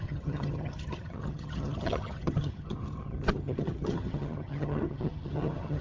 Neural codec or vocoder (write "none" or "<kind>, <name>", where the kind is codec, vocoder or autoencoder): vocoder, HiFi-GAN